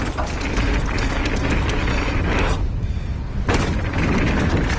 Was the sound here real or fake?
real